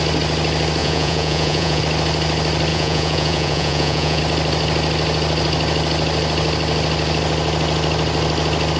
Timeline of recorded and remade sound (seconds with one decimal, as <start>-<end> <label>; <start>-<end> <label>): 0.0-0.8 recorded; 0.8-1.8 remade; 1.8-2.7 recorded; 2.7-4.2 remade; 4.2-8.8 recorded